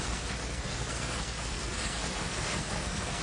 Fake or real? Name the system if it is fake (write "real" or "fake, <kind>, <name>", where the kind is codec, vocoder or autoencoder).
fake, codec, SNAC